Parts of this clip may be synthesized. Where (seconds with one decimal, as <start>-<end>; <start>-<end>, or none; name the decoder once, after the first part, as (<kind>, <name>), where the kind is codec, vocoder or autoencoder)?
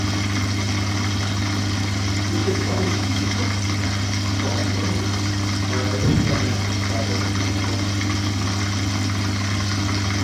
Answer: 2.4-3.4 (autoencoder, DAC-VAE)